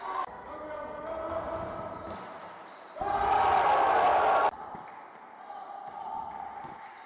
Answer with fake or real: real